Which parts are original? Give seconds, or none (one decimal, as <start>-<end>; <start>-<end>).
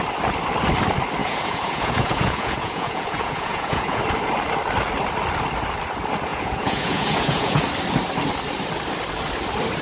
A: 0.0-1.2; 4.0-6.3; 7.6-9.8